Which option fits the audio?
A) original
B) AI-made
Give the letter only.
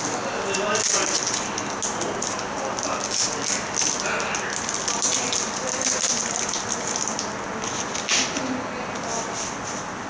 A